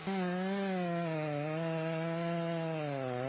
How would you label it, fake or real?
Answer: real